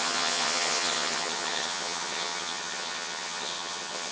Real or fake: fake